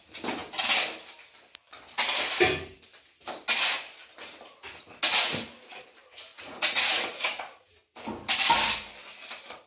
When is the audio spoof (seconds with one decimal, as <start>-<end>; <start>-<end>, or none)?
6.3-7.7